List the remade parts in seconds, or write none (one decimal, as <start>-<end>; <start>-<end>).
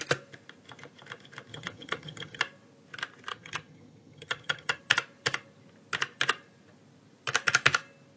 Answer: 1.5-2.4; 3.3-4.8